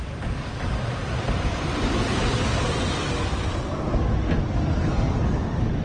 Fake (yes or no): no